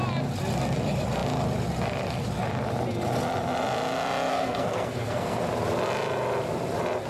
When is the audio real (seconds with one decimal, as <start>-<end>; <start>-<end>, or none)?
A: 0.0-4.3; 5.4-7.1